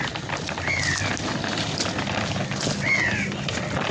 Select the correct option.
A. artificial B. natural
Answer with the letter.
B